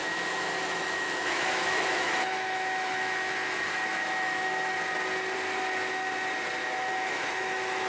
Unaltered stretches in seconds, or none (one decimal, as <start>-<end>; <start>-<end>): 4.7-6.6